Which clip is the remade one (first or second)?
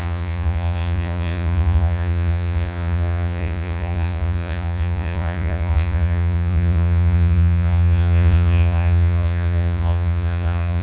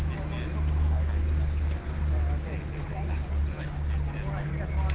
first